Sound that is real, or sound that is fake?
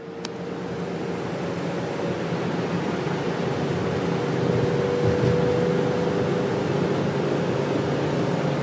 real